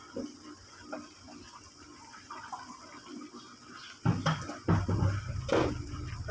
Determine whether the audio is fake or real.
real